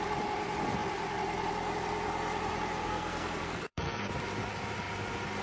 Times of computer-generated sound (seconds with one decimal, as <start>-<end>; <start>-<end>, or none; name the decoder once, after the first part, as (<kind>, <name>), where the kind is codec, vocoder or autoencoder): 2.8-4.1 (codec, SNAC)